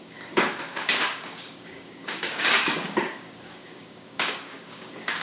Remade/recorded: remade